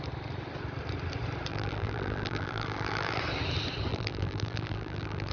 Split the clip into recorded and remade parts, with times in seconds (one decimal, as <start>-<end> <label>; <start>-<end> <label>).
0.0-1.5 recorded; 1.5-3.2 remade; 3.2-3.9 recorded; 3.9-5.3 remade